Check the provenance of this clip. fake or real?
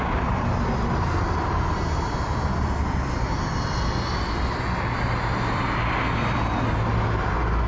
real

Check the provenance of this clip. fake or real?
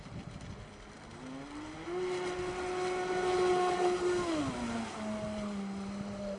real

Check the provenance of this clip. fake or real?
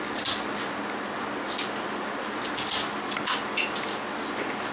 real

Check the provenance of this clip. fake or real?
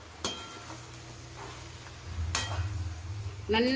real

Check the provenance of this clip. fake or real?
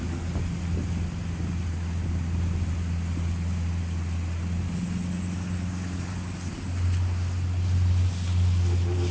real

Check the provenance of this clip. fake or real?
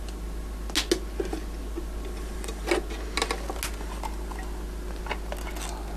real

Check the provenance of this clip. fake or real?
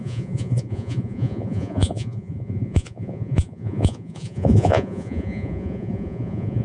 fake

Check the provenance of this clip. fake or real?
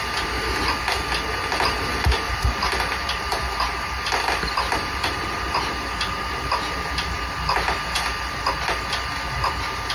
real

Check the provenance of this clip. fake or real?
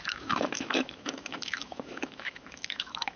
fake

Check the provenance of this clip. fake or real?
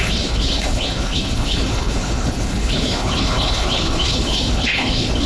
fake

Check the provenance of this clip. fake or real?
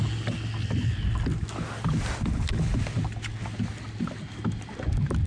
real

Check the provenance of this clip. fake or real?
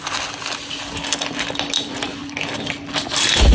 real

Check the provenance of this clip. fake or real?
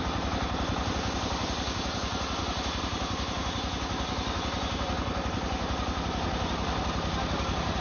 real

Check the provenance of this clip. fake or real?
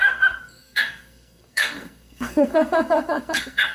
fake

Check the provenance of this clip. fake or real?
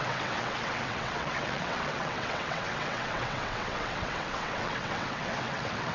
fake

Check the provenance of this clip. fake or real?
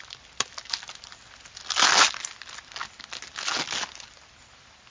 real